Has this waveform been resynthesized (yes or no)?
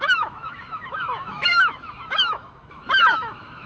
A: yes